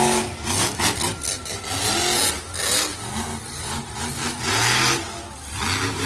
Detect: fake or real real